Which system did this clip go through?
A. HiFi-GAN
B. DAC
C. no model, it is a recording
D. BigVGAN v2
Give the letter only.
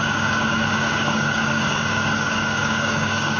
B